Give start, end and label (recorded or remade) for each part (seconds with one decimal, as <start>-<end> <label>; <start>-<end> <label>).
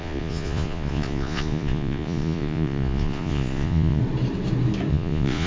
0.0-4.0 remade; 4.0-4.9 recorded; 4.9-5.5 remade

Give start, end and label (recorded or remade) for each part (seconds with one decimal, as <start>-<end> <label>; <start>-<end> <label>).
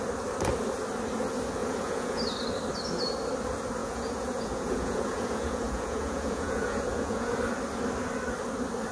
0.0-1.6 recorded; 1.6-2.2 remade; 2.2-3.8 recorded; 3.8-7.3 remade; 7.3-8.9 recorded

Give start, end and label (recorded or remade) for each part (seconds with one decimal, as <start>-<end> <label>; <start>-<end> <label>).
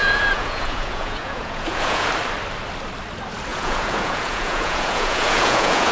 0.0-2.1 remade; 2.1-3.5 recorded; 3.5-5.9 remade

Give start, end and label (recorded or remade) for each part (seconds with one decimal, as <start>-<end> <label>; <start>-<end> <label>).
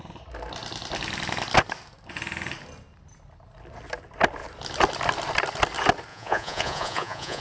0.0-6.1 recorded; 6.1-7.4 remade